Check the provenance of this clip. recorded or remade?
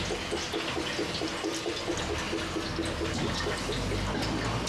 recorded